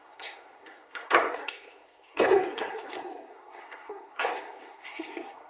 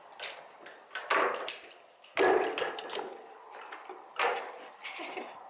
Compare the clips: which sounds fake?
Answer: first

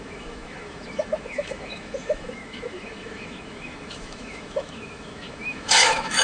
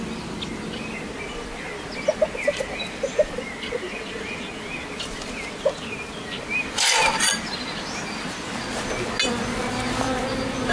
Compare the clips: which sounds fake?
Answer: first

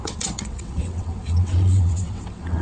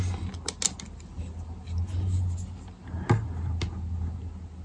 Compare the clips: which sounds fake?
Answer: first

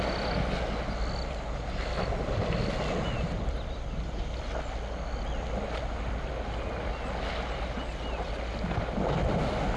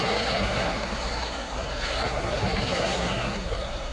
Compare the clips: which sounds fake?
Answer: second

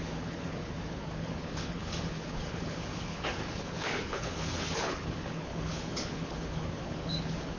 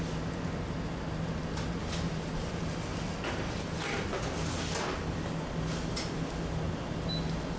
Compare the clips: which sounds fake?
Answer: first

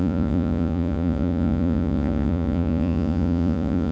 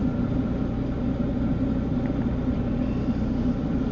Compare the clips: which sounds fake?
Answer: first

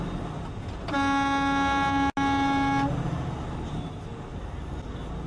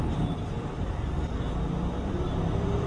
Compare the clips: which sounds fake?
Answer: second